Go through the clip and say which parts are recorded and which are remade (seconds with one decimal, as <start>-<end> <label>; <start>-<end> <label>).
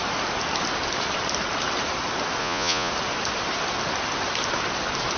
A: 0.0-2.4 recorded; 2.4-2.9 remade; 2.9-5.2 recorded